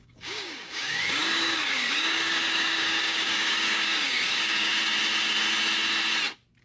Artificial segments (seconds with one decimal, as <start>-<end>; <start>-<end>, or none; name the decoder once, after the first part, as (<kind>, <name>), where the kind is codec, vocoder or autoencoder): 0.0-4.7 (codec, DAC)